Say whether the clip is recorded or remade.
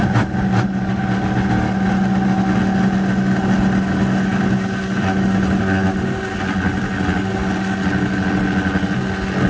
recorded